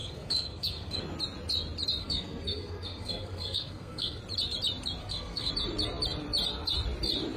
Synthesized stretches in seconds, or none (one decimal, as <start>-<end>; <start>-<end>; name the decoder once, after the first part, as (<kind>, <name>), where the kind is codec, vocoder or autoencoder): 0.0-1.0 (codec, SNAC); 2.0-4.2; 5.0-5.5